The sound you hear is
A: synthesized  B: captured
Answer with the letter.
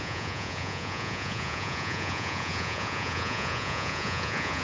A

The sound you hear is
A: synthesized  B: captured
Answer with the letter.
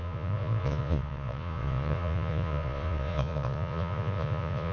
A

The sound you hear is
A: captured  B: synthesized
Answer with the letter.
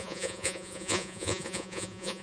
B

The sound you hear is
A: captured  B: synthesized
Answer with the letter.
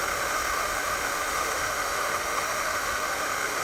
B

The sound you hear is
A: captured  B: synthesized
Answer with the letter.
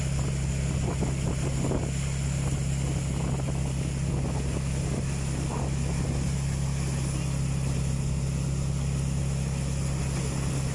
A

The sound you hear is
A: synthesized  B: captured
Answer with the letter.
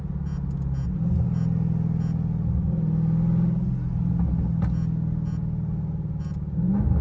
B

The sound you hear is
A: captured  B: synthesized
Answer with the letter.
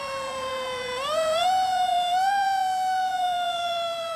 B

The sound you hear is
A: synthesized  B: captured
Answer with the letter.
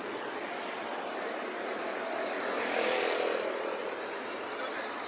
A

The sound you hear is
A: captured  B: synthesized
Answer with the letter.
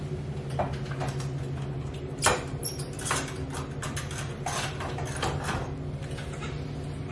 A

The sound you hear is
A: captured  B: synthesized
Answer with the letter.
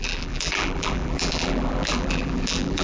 B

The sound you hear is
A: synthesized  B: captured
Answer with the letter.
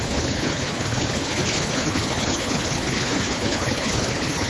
A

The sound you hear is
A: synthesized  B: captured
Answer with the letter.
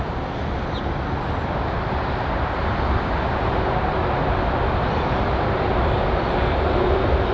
B